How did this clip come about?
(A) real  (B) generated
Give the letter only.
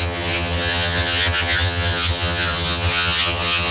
B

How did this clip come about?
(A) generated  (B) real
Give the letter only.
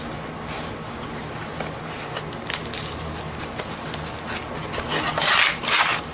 B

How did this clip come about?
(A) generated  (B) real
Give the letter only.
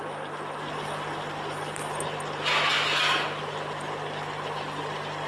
B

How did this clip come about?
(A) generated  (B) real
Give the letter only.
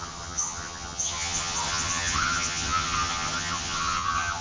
A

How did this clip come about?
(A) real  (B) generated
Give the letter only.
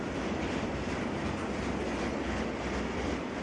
A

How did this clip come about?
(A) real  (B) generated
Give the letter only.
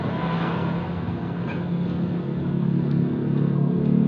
B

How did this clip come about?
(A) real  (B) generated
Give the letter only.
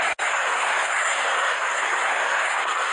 B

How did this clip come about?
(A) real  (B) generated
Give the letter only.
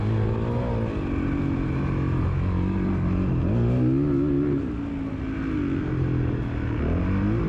A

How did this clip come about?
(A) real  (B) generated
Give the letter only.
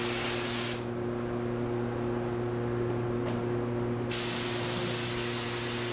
A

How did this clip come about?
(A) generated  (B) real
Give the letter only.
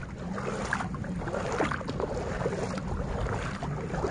B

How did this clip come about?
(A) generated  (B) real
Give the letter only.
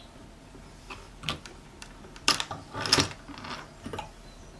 B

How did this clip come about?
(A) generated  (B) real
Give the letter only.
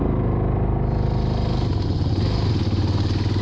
B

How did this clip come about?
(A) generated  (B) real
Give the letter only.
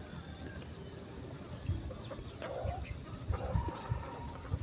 B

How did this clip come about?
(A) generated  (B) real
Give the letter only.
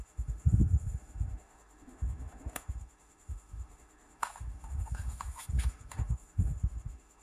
A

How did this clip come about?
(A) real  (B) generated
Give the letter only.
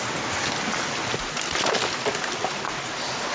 A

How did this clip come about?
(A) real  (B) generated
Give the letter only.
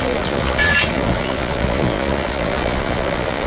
B